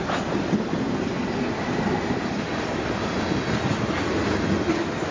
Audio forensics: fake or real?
real